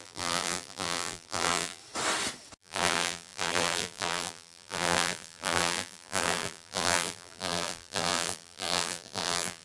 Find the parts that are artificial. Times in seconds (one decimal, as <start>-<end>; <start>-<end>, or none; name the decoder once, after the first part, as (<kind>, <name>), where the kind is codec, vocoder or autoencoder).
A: 0.0-1.8 (vocoder, BigVGAN v2); 2.6-9.6